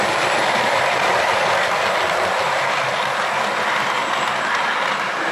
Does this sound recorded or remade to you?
recorded